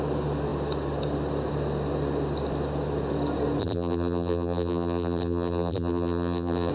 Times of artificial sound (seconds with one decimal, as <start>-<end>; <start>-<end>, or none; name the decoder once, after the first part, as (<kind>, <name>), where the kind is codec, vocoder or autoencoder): 3.6-6.7 (vocoder, BigVGAN v2)